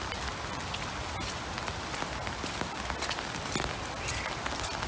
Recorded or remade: recorded